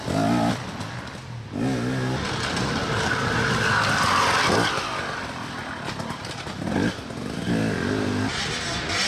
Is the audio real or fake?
real